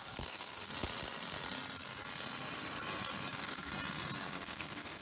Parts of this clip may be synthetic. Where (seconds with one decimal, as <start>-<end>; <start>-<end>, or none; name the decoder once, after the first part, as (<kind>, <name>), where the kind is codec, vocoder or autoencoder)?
0.0-0.7 (codec, SNAC); 3.3-3.7; 4.2-5.0